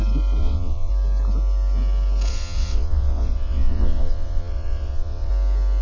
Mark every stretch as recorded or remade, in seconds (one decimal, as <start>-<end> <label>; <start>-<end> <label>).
0.0-0.4 recorded; 0.4-0.9 remade; 0.9-2.3 recorded; 2.3-5.3 remade; 5.3-5.8 recorded